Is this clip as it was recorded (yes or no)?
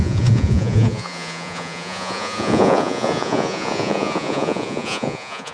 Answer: no